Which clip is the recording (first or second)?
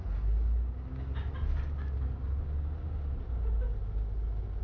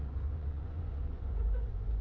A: first